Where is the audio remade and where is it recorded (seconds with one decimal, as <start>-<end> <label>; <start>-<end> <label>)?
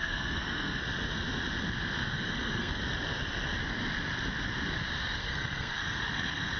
0.0-0.8 remade; 0.8-2.0 recorded; 2.0-2.8 remade; 2.8-5.2 recorded; 5.2-6.6 remade